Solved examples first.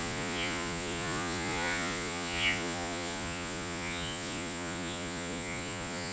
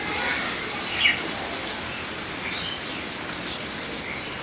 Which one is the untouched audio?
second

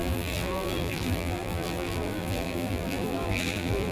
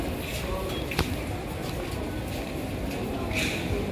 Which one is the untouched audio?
second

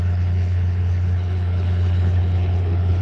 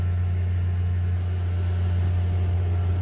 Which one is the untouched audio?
second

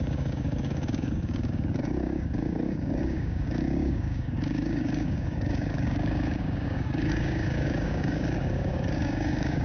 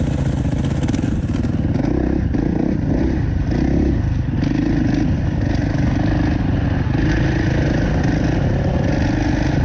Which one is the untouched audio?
second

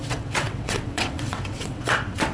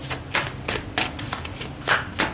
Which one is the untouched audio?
second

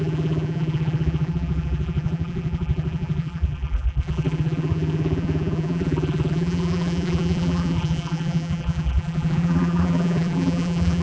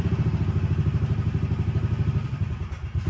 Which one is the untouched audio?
second